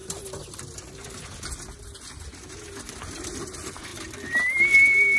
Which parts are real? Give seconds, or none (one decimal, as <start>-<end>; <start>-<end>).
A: 0.0-5.2

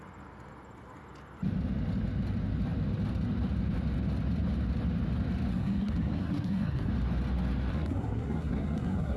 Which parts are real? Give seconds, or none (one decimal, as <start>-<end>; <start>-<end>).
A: 0.0-5.5; 6.9-7.7

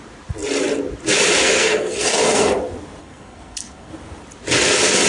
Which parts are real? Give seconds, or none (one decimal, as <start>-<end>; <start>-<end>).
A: 0.0-1.4; 2.5-3.0; 3.9-5.1

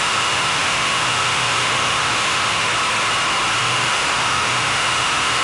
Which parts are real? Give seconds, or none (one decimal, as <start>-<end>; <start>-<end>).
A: 2.7-3.6

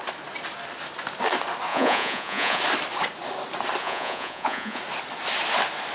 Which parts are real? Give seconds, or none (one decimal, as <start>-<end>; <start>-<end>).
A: 0.0-1.7; 2.6-3.8; 4.8-5.9

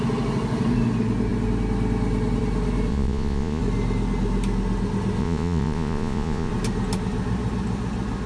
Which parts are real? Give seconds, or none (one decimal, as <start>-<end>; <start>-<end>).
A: 0.0-2.9; 3.6-5.2; 6.5-8.3

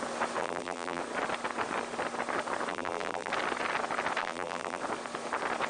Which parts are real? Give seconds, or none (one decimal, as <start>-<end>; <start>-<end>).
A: 0.0-0.4; 1.0-2.7; 3.3-4.2; 4.8-5.7

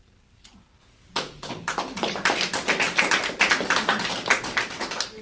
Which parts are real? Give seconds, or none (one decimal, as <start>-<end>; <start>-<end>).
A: 0.0-0.8; 1.5-5.2